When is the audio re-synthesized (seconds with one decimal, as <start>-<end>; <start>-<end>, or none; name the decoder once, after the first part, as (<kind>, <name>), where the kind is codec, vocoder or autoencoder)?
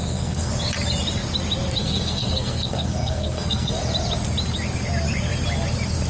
0.0-0.5 (codec, SNAC); 1.8-3.8